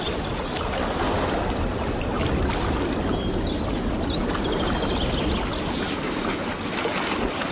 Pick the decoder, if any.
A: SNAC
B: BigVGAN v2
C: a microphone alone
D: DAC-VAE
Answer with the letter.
C